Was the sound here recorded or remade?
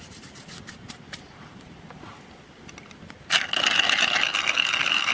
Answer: recorded